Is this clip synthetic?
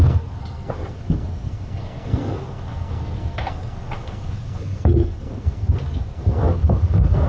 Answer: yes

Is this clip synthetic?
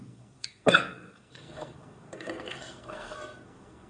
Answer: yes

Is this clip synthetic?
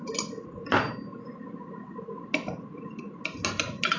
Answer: no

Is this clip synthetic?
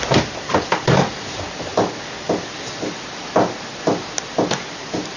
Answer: no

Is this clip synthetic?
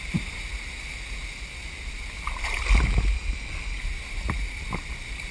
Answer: no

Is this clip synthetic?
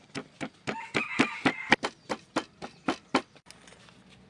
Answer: no